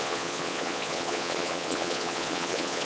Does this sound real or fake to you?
fake